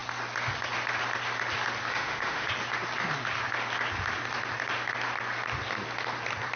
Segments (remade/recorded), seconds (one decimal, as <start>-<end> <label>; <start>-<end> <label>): 0.0-1.9 recorded; 1.9-2.5 remade; 2.5-6.6 recorded